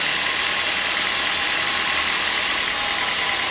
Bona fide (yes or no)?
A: yes